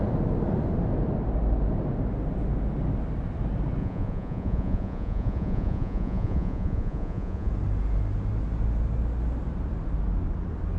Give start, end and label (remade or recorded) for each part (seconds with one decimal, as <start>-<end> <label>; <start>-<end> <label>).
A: 0.0-3.8 recorded; 3.8-7.5 remade; 7.5-10.8 recorded